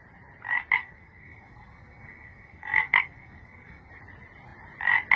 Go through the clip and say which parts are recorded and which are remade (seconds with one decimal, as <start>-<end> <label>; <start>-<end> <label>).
0.0-0.8 recorded; 0.8-3.9 remade; 3.9-5.2 recorded